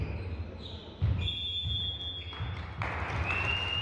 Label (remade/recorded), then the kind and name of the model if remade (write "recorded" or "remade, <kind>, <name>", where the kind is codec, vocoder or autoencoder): recorded